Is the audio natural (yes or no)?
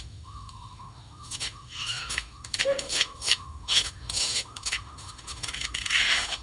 no